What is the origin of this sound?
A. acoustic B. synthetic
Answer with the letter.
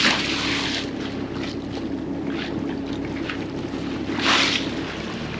A